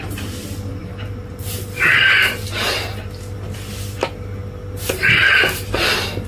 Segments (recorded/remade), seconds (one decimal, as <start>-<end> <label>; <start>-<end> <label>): 0.0-0.8 recorded; 0.8-1.3 remade; 1.3-6.3 recorded